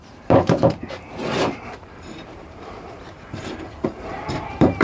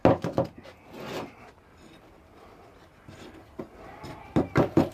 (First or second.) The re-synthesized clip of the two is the first